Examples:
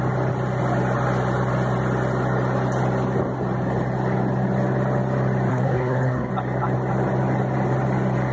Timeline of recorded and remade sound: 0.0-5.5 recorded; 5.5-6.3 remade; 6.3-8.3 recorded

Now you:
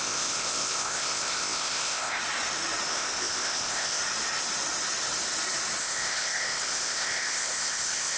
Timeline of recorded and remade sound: 0.0-2.2 remade; 2.2-2.9 recorded; 2.9-4.0 remade; 4.0-5.8 recorded; 5.8-8.2 remade

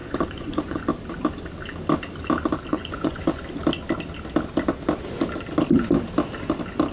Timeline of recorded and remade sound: 0.0-0.8 remade; 0.8-2.7 recorded; 2.7-3.4 remade; 3.4-6.9 recorded

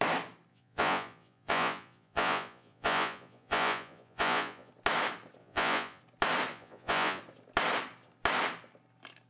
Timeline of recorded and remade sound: 0.0-0.5 recorded; 0.5-4.7 remade; 4.7-5.4 recorded; 5.4-6.0 remade; 6.0-6.5 recorded; 6.5-7.2 remade; 7.2-9.3 recorded